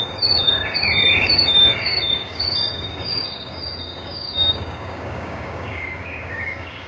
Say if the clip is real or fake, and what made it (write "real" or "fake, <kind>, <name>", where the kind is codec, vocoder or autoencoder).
fake, codec, DAC